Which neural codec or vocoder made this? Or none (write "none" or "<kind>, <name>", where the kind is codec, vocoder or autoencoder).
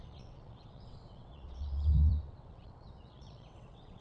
vocoder, WaveNeXt